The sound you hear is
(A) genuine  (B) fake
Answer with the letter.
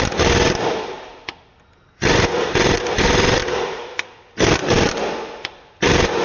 A